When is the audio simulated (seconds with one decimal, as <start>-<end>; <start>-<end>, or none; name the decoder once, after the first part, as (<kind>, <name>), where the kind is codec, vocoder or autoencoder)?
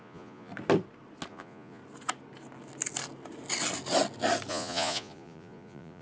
0.0-0.5 (vocoder, Vocos); 1.3-1.8; 4.5-6.0